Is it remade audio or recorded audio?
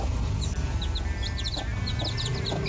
recorded